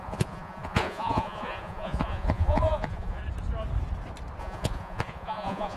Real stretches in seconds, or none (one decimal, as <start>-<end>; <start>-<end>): 3.2-4.4